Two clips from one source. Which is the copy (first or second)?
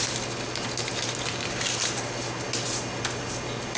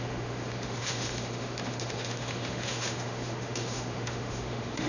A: second